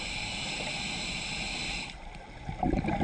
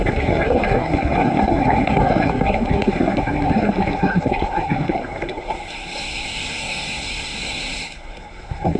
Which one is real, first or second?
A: first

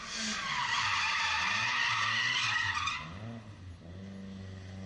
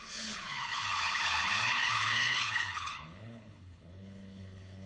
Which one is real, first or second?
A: first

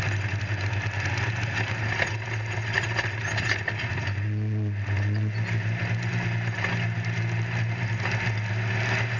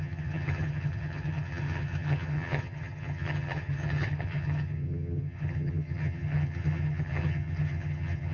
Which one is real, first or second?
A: first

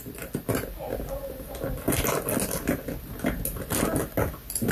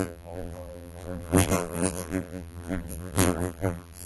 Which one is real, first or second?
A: first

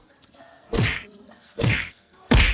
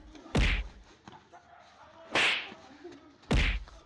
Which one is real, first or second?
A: second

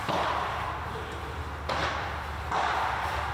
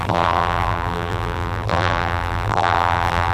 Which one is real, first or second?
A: first